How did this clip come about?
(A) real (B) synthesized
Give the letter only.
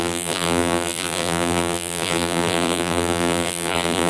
B